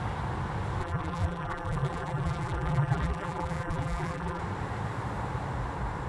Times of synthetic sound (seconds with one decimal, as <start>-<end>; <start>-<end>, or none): 0.8-4.4